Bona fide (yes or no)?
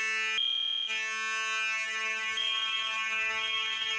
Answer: yes